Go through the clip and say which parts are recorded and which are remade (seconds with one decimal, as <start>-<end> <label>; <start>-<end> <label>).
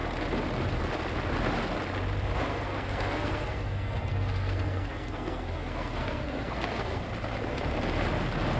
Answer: 0.0-2.5 recorded; 2.5-7.0 remade; 7.0-8.6 recorded